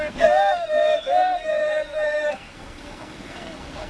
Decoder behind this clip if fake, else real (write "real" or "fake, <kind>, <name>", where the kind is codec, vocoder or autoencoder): fake, codec, SNAC